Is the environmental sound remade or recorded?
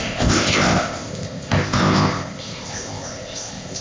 remade